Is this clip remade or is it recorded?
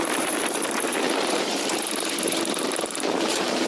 remade